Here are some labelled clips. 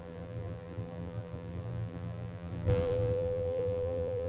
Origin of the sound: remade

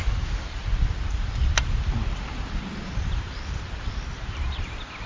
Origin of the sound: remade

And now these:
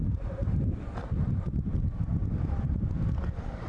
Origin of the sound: remade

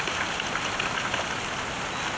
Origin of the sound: recorded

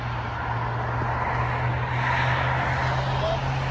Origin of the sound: recorded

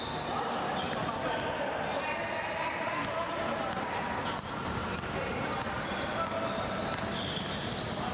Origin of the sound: recorded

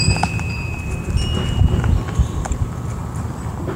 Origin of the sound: remade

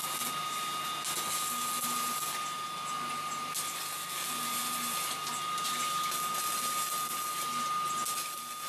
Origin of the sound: recorded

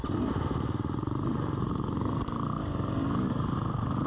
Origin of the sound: remade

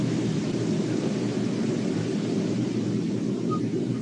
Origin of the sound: remade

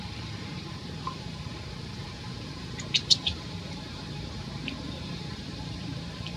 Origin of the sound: remade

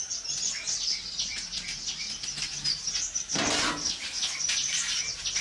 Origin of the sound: recorded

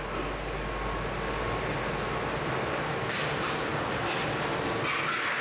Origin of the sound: recorded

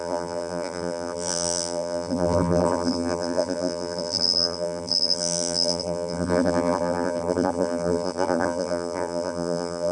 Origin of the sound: remade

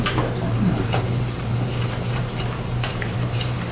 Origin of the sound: remade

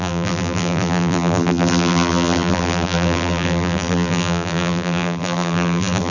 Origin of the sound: remade